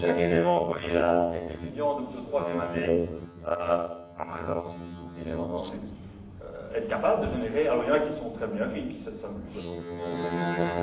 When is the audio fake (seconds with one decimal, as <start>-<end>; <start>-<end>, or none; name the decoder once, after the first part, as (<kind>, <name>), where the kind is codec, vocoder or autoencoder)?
0.0-1.7 (vocoder, HiFi-GAN); 2.4-5.6; 9.6-10.8